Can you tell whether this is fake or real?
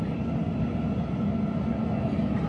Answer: real